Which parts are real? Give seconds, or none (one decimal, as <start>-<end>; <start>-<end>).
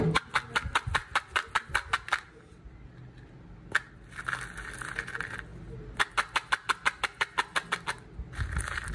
0.0-8.9